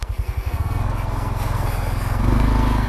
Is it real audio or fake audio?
fake